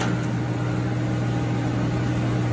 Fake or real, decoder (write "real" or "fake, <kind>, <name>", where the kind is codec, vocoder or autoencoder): real